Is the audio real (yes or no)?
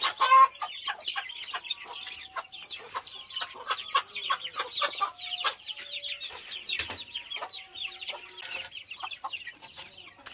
yes